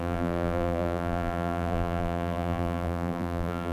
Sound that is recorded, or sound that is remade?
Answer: remade